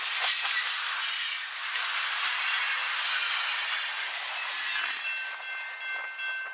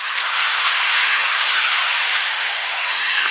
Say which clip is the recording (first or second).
first